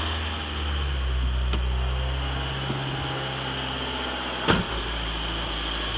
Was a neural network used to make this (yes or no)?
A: no